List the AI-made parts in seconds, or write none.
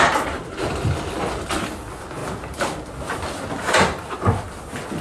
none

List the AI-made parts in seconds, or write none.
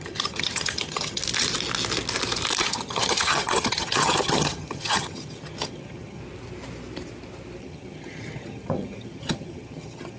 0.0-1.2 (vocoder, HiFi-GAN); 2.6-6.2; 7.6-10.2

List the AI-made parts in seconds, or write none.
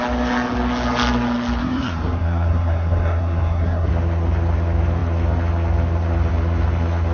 1.6-3.9 (codec, SNAC)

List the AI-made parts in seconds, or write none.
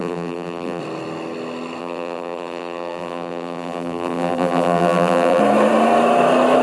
0.0-0.8 (vocoder, BigVGAN v2); 1.8-5.4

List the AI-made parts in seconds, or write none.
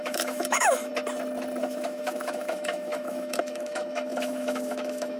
0.0-0.9 (autoencoder, DAC-VAE); 1.6-5.2